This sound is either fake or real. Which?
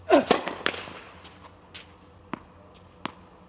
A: real